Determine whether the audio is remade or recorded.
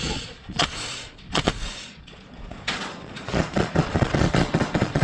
remade